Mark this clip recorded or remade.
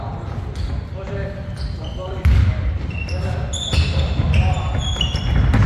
recorded